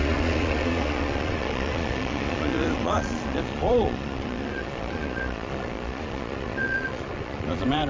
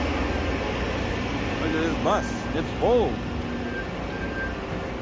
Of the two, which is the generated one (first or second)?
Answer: first